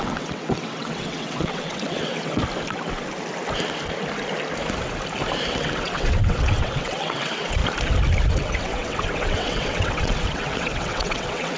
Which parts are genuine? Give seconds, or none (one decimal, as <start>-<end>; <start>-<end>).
2.4-5.5; 7.6-8.3